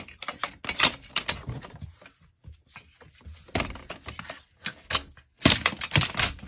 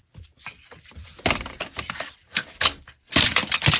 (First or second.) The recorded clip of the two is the first